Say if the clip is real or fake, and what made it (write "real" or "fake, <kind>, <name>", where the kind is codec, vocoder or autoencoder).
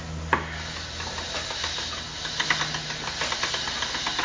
real